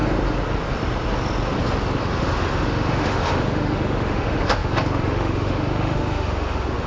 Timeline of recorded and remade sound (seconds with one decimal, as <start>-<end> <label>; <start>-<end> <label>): 0.0-2.0 recorded; 2.0-6.9 remade